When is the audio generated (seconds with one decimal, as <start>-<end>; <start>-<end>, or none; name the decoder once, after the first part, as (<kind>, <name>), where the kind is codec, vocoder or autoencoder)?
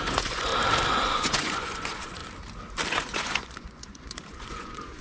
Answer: 0.0-0.5 (vocoder, Vocos); 1.0-2.2; 2.9-5.0